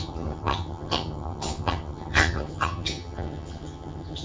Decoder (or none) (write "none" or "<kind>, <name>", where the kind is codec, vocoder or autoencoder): vocoder, HiFi-GAN